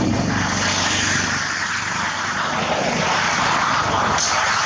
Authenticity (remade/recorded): recorded